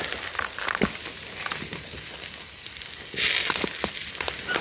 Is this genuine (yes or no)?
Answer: yes